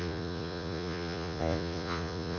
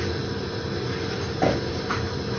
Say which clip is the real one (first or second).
second